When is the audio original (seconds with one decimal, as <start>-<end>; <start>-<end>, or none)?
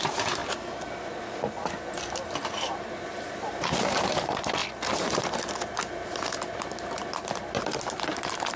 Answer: 0.4-2.5; 4.6-5.7